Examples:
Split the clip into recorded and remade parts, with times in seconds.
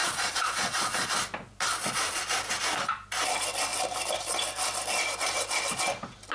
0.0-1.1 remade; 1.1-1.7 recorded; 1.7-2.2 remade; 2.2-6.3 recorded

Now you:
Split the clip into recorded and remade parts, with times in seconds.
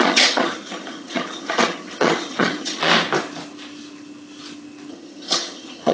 0.0-2.9 remade; 2.9-4.9 recorded; 4.9-5.9 remade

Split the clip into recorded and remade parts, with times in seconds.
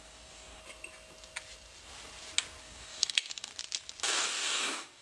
0.0-0.6 remade; 0.6-2.6 recorded; 2.6-3.5 remade; 3.5-4.0 recorded; 4.0-5.0 remade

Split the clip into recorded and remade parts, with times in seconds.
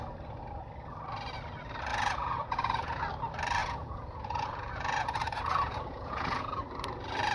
0.0-1.9 recorded; 1.9-3.0 remade; 3.0-3.6 recorded; 3.6-6.6 remade; 6.6-7.3 recorded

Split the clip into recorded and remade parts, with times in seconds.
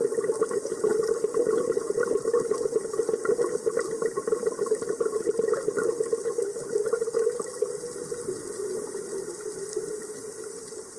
0.0-11.0 recorded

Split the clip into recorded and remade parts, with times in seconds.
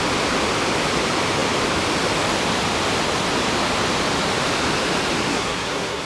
0.0-5.3 recorded; 5.3-6.0 remade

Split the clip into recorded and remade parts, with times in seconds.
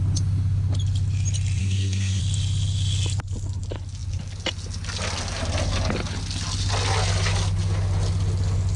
0.0-1.6 recorded; 1.6-2.2 remade; 2.2-8.8 recorded